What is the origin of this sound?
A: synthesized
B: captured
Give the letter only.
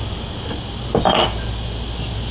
B